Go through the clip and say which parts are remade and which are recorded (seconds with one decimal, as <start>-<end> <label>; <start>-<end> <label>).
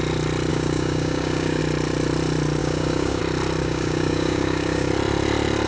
0.0-0.5 recorded; 0.5-1.6 remade; 1.6-2.6 recorded; 2.6-3.2 remade; 3.2-3.6 recorded; 3.6-4.9 remade; 4.9-5.7 recorded